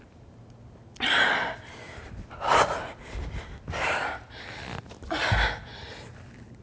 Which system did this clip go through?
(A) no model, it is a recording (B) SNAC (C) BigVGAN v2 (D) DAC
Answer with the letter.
A